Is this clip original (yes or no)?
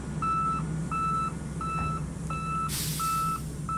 yes